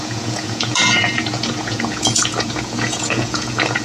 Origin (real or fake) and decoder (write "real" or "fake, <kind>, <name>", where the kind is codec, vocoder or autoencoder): fake, vocoder, Vocos